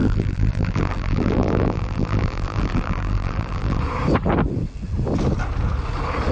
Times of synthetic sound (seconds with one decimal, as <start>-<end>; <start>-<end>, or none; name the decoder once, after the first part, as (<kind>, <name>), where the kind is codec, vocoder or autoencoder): 0.0-3.8 (vocoder, BigVGAN v2)